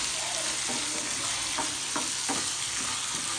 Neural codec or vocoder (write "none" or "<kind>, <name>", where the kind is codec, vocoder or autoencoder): none